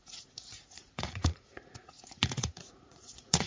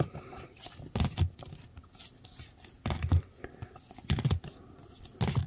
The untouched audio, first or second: second